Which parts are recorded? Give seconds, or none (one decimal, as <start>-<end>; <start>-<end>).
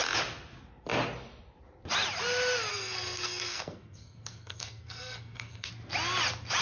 0.0-2.7; 5.7-6.6